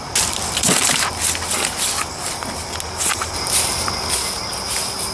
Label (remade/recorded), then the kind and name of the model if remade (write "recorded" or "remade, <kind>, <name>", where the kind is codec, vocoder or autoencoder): recorded